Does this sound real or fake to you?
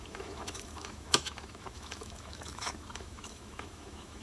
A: fake